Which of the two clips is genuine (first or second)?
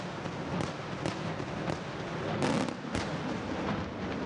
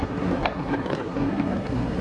first